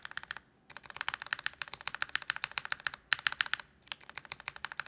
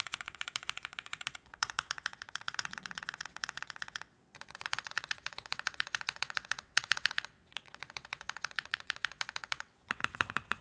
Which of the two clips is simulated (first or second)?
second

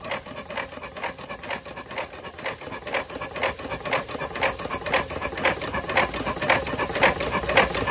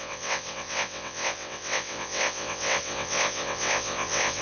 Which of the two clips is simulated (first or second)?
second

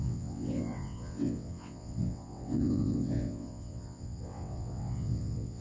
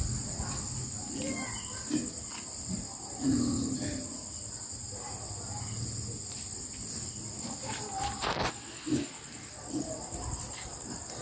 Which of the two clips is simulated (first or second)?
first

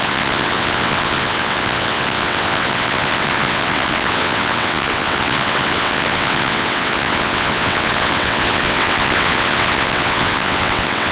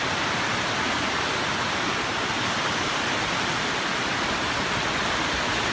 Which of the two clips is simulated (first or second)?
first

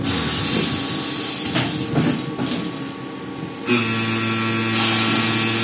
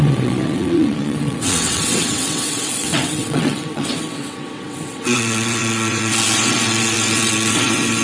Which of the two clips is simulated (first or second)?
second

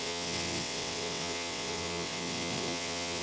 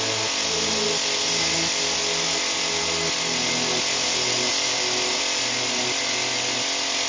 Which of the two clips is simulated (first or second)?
first